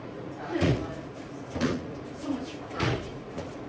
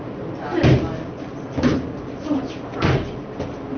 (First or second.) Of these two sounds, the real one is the second